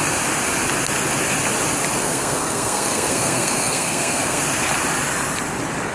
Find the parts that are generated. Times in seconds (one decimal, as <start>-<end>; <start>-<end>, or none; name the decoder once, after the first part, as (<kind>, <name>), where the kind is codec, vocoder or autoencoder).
2.0-4.4 (codec, SNAC)